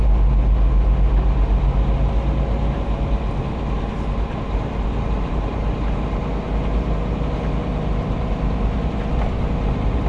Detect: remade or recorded recorded